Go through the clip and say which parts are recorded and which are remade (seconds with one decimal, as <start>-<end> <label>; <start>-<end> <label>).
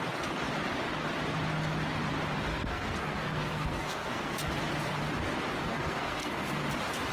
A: 0.0-2.5 recorded; 2.5-4.5 remade; 4.5-5.6 recorded; 5.6-6.6 remade; 6.6-7.1 recorded